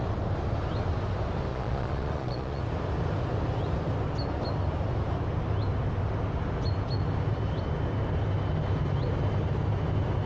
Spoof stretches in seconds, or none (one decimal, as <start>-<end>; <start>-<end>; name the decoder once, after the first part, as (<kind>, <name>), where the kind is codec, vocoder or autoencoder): 1.5-2.6 (vocoder, Vocos)